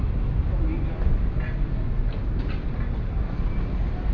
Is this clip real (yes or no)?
yes